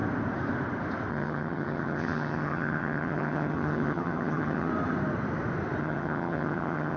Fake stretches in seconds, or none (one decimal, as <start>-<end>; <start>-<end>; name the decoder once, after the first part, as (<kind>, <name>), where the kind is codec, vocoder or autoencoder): 1.1-4.7 (vocoder, HiFi-GAN); 5.8-7.0